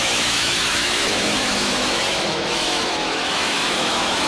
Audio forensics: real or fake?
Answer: fake